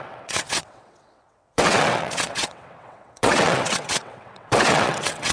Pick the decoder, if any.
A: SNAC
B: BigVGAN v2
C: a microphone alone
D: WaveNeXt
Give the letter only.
D